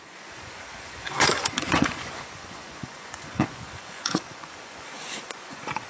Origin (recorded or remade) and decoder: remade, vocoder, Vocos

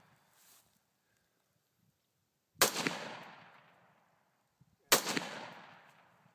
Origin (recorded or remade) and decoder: recorded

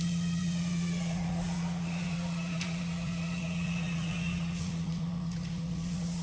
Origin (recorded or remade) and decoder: remade, vocoder, Vocos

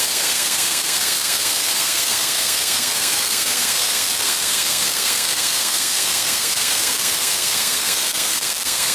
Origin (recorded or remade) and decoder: remade, codec, SNAC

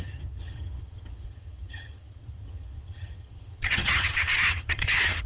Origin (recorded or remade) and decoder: remade, vocoder, HiFi-GAN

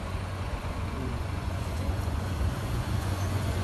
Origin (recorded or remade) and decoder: remade, vocoder, Vocos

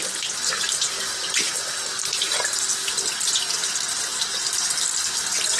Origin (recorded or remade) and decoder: recorded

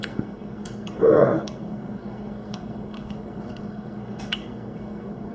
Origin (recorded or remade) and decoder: remade, codec, SNAC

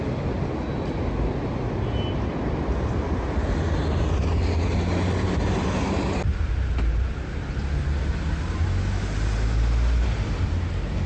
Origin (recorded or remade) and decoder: recorded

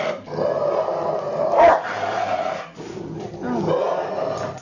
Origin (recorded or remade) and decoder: recorded